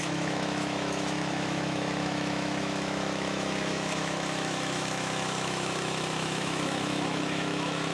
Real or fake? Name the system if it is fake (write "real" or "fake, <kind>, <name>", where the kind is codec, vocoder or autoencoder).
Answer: fake, autoencoder, DAC-VAE